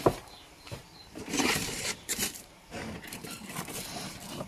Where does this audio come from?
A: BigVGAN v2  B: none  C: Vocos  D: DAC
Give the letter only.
A